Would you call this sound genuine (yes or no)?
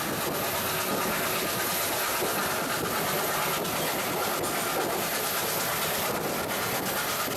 yes